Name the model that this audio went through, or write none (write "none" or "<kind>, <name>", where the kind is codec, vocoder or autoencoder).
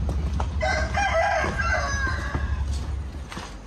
none